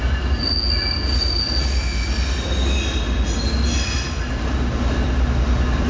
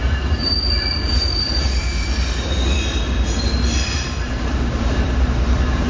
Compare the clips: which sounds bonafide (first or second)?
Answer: first